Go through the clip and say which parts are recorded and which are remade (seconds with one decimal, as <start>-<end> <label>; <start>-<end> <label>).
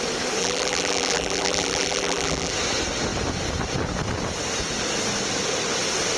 0.0-0.4 recorded; 0.4-2.5 remade; 2.5-6.2 recorded